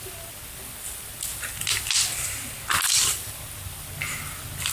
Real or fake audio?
real